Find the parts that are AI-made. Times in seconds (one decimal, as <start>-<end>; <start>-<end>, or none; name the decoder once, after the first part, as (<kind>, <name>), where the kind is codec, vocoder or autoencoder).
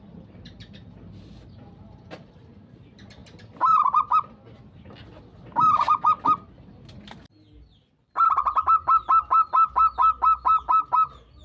none